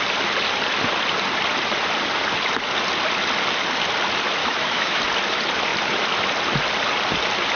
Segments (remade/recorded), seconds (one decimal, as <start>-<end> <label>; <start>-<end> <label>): 0.0-4.4 recorded; 4.4-5.0 remade; 5.0-7.6 recorded